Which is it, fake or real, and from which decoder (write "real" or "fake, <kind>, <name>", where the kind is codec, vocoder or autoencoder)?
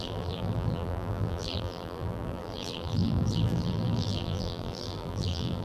fake, vocoder, BigVGAN v2